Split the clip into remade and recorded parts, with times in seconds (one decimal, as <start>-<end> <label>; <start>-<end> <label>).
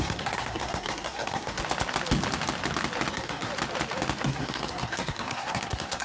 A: 0.0-1.6 remade; 1.6-3.1 recorded; 3.1-3.5 remade; 3.5-4.2 recorded; 4.2-6.0 remade